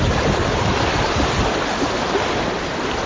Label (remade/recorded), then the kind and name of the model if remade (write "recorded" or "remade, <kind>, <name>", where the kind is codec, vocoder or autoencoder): recorded